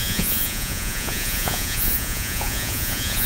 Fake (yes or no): yes